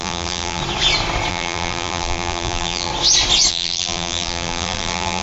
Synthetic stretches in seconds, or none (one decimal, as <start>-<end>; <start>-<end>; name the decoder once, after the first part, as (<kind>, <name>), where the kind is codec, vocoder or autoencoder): 0.0-0.6 (vocoder, BigVGAN v2); 1.3-2.9; 3.5-5.2